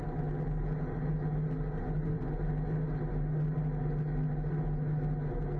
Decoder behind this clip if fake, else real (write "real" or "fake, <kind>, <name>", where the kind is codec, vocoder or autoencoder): real